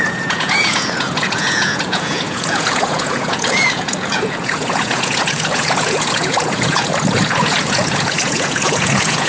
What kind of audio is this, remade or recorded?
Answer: remade